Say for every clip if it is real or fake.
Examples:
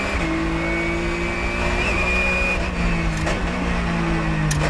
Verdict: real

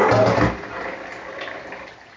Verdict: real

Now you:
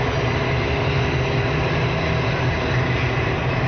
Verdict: real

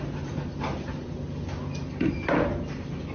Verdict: real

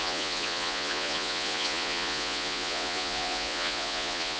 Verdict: fake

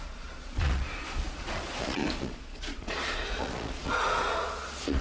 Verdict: fake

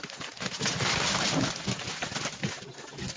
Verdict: real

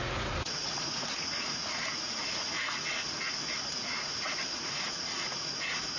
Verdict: fake